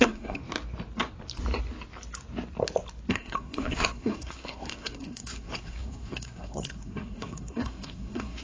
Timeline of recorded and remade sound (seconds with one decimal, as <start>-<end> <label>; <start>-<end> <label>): 0.0-0.4 remade; 0.4-3.1 recorded; 3.1-8.4 remade